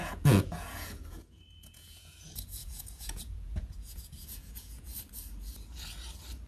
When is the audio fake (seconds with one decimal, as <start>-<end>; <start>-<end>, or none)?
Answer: 0.0-4.9